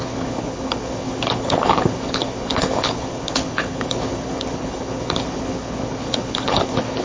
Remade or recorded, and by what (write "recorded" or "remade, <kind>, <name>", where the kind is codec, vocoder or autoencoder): remade, codec, HILCodec